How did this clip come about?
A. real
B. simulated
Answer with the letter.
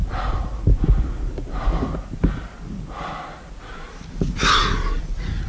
A